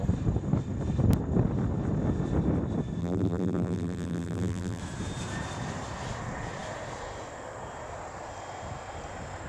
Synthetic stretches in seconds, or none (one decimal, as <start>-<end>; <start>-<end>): 3.0-4.8